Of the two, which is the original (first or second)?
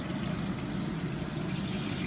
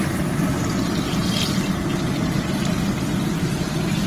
first